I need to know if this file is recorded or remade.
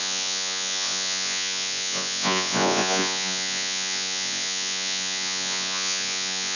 remade